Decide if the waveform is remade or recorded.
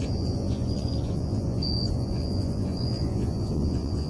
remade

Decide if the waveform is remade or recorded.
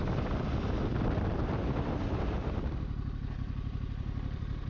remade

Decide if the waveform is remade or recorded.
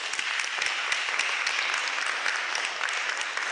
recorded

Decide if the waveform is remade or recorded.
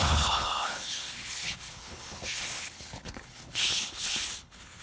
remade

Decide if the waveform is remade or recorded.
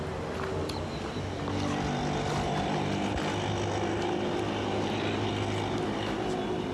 recorded